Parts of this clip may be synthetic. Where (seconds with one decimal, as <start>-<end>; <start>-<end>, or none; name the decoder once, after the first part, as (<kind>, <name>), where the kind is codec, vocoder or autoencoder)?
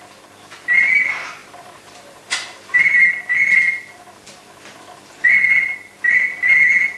1.4-3.1 (vocoder, BigVGAN v2)